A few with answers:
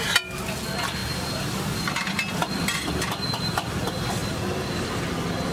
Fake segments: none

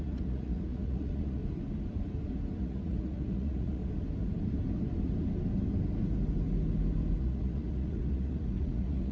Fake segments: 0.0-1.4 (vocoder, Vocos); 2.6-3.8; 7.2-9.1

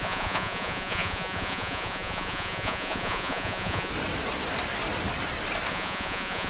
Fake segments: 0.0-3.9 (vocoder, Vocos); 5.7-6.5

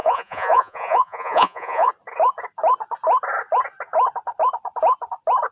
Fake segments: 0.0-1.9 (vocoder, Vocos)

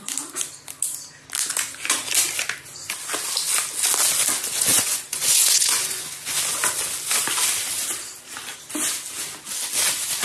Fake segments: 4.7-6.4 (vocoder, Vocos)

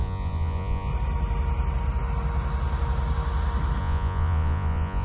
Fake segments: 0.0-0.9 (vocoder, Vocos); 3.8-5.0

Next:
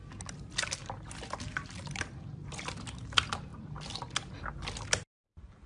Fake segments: none

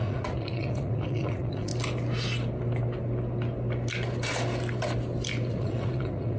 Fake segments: 0.0-1.7 (vocoder, Vocos); 5.5-6.4